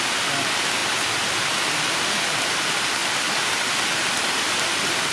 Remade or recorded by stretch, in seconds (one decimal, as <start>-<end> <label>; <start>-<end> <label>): 0.0-5.1 recorded